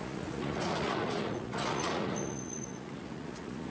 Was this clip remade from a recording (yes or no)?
yes